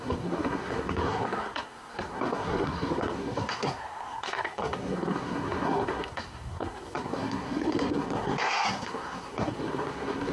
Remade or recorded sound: remade